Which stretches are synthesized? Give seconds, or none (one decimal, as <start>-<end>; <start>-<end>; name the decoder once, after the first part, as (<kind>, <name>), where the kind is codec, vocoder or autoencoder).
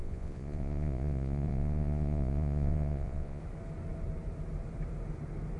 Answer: 0.0-3.4 (vocoder, Vocos)